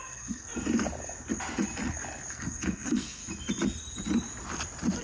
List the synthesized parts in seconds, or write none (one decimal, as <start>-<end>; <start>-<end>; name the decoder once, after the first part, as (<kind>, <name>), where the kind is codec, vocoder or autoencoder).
0.0-0.5 (codec, SNAC); 2.3-3.2